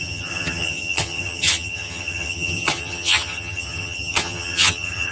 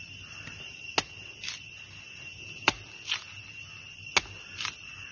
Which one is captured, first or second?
second